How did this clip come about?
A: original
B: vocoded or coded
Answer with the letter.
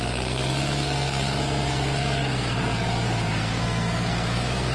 B